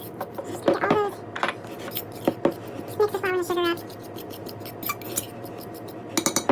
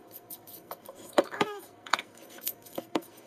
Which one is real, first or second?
first